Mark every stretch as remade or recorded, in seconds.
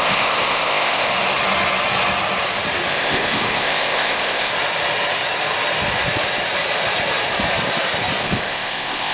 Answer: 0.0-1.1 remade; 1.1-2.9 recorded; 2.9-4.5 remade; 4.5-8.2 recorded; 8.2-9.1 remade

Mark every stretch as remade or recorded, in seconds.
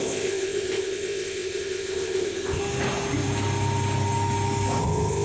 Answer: 0.0-2.6 remade; 2.6-4.8 recorded; 4.8-5.2 remade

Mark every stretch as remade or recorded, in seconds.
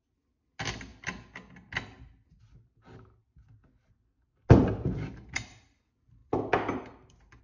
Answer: 0.0-7.4 recorded